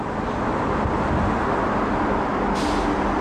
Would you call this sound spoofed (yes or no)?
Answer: no